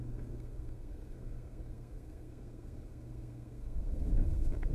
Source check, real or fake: fake